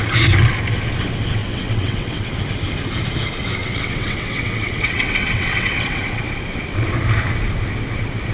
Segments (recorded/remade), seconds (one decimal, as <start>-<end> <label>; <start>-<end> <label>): 0.0-1.4 recorded; 1.4-2.3 remade; 2.3-3.6 recorded; 3.6-6.3 remade; 6.3-8.3 recorded